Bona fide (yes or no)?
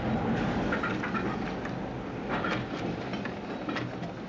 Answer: yes